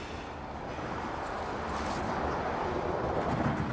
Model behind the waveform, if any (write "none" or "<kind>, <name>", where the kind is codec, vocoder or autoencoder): vocoder, BigVGAN v2